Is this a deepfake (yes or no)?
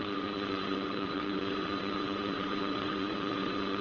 yes